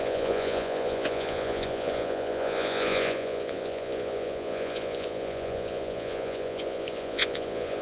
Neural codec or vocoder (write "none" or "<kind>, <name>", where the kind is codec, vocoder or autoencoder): vocoder, Vocos